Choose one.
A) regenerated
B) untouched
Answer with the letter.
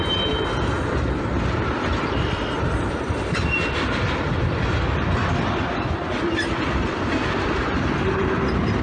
B